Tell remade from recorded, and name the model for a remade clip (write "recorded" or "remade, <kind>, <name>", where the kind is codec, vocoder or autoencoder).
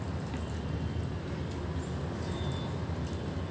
recorded